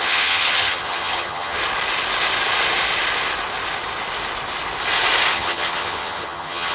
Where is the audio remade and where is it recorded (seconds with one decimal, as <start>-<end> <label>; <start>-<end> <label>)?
0.0-1.6 remade; 1.6-5.3 recorded; 5.3-6.7 remade